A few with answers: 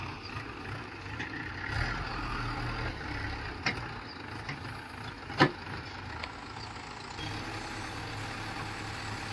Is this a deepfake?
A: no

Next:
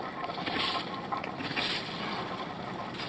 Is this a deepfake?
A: no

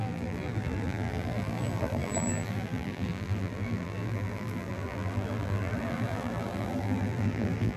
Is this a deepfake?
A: yes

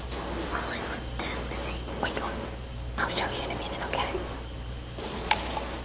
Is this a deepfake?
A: no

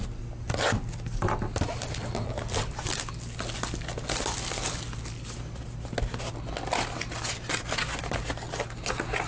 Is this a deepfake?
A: no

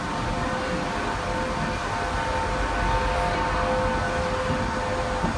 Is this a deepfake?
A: no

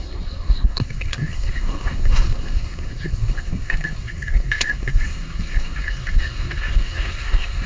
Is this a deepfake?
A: yes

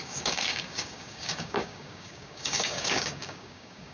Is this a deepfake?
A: yes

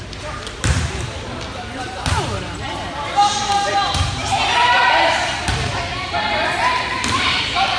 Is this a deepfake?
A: yes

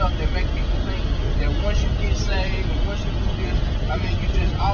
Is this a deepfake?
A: no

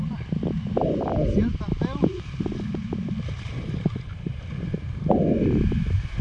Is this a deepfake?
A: no